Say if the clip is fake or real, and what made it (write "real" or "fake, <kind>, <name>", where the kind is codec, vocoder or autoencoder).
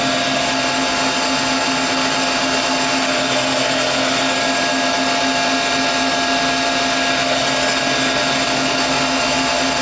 real